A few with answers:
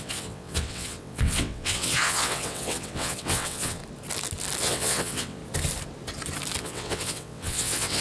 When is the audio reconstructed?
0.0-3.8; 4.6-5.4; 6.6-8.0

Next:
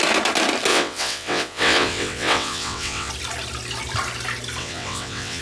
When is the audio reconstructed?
0.7-3.1; 4.6-5.4